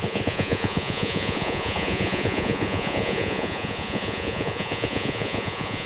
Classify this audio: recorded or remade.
remade